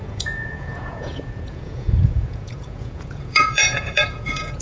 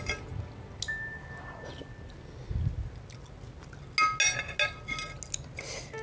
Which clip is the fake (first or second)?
first